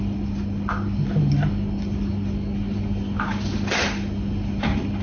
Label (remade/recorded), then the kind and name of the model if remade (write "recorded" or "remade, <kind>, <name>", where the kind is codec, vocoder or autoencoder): recorded